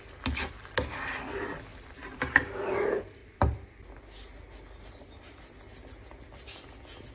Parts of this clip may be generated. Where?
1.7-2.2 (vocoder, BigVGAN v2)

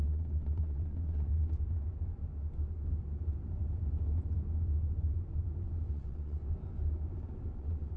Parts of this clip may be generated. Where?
0.0-1.3 (vocoder, WaveNeXt); 5.9-6.4; 7.5-8.0

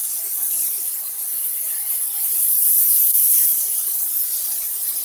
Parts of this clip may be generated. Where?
none

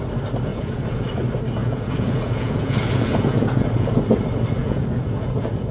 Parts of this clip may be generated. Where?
0.5-1.1 (vocoder, Vocos); 1.6-4.0; 4.6-5.7

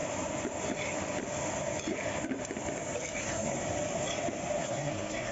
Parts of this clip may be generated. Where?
3.2-3.6 (codec, SNAC); 4.6-5.3

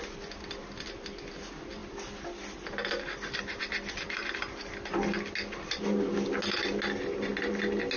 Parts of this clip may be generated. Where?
1.8-3.4 (vocoder, BigVGAN v2)